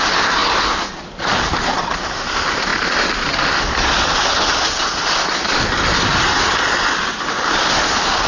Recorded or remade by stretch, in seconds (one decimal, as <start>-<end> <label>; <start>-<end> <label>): 0.0-8.3 recorded